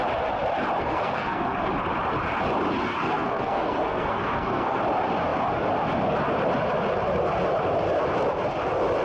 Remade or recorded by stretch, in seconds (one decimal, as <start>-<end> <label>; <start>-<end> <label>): 0.0-0.8 recorded; 0.8-1.7 remade; 1.7-2.9 recorded; 2.9-4.8 remade; 4.8-9.0 recorded